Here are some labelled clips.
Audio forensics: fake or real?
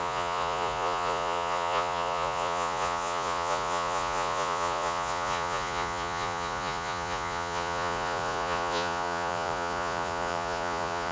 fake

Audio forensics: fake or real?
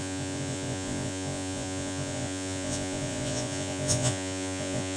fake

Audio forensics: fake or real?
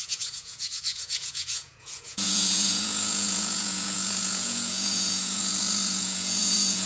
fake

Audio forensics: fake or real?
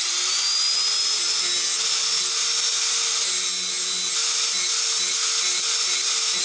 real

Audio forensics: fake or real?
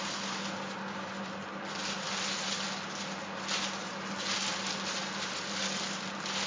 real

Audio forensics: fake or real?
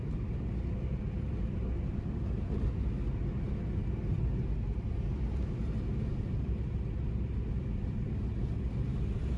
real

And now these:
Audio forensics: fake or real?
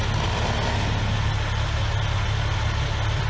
real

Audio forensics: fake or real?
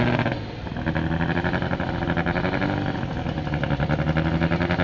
real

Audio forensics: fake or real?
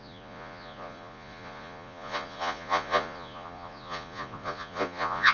fake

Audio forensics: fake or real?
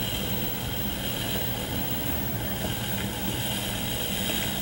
real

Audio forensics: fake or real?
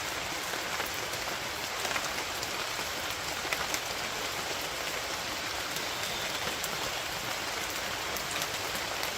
real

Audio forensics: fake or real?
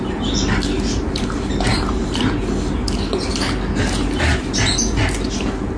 real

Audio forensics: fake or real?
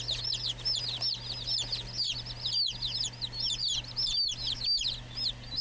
real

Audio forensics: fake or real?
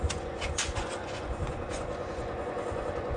fake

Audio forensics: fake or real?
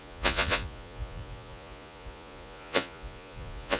fake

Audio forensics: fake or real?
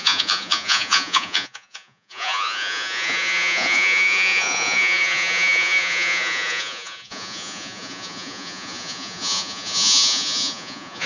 fake